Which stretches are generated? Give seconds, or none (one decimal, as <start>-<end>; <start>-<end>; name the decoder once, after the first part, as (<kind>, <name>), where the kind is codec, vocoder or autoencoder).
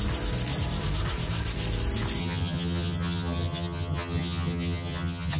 2.2-5.4 (vocoder, HiFi-GAN)